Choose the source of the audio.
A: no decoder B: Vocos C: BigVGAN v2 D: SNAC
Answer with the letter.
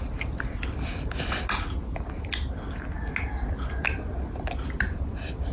A